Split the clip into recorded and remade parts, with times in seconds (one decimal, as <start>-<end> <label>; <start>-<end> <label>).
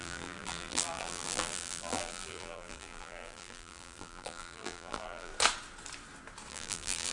0.0-5.3 remade; 5.3-6.5 recorded; 6.5-7.1 remade